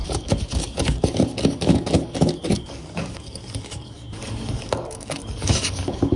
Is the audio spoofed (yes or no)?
yes